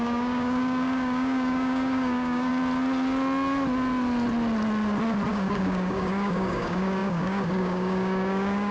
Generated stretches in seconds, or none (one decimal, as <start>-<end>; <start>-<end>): 0.0-2.5; 5.3-8.7